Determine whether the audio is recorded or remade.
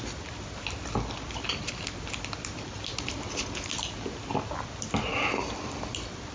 recorded